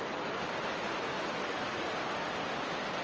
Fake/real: real